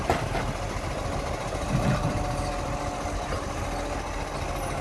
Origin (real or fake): real